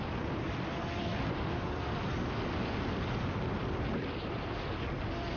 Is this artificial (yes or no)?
no